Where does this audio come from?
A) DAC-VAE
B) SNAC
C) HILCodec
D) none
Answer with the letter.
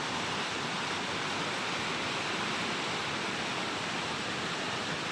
D